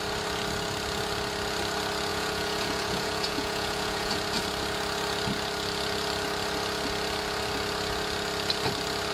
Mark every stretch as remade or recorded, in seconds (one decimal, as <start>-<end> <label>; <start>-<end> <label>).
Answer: 0.0-2.1 recorded; 2.1-4.1 remade; 4.1-9.1 recorded